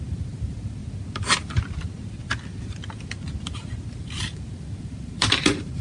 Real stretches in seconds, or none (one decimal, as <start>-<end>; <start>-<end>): 0.8-3.9